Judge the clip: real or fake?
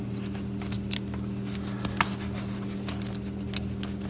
real